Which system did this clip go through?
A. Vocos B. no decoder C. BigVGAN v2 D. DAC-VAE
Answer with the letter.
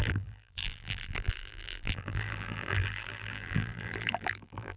C